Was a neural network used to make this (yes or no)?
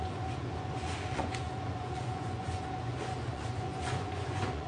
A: yes